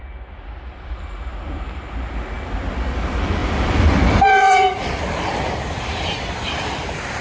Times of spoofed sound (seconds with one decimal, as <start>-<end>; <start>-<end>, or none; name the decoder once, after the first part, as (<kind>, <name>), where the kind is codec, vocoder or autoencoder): 3.4-6.1 (vocoder, BigVGAN v2)